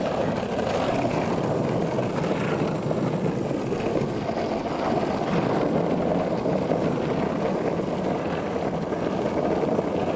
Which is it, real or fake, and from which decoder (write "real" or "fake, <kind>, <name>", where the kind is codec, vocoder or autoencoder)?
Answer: real